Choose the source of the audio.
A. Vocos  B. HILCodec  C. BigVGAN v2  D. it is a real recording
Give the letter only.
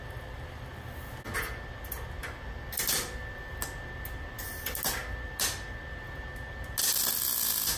D